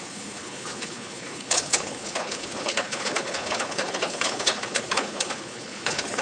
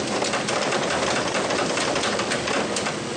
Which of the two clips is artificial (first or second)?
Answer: first